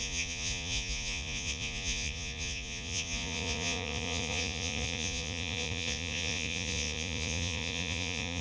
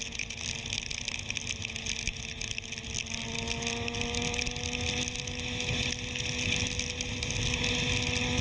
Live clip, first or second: second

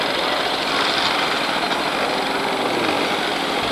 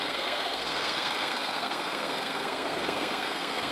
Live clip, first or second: first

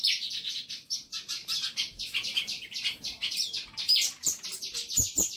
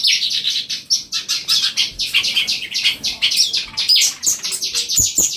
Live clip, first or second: second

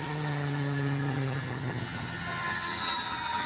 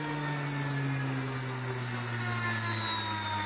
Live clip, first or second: second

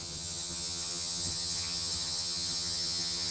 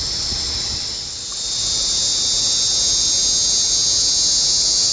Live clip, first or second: second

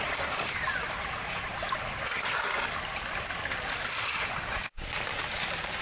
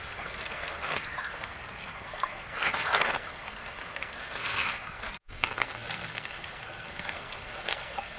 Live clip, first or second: first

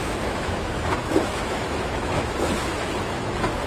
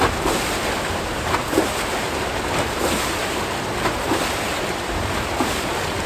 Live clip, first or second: second